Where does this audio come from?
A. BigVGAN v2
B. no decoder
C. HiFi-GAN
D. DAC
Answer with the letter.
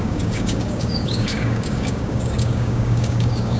D